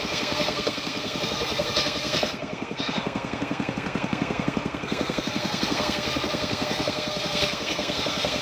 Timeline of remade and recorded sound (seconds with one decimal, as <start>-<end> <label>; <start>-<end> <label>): 0.0-8.4 remade